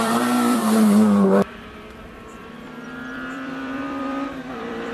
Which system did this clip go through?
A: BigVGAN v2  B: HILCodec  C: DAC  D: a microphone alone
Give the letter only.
A